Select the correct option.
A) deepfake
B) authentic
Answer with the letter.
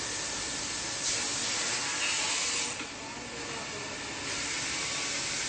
B